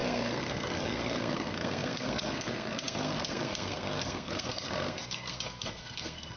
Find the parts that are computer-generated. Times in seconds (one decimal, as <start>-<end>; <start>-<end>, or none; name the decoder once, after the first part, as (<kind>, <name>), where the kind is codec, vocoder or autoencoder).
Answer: 0.0-6.4 (codec, SNAC)